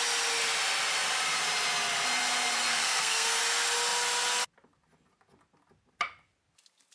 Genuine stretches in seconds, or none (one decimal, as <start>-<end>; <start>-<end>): 0.0-2.7; 3.4-6.9